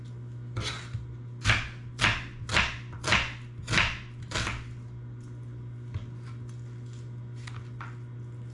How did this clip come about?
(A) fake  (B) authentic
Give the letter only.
B